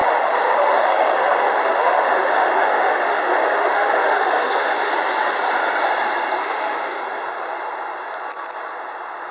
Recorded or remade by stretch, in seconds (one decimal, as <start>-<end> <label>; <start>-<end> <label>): 0.0-4.9 remade; 4.9-6.4 recorded; 6.4-7.0 remade; 7.0-9.3 recorded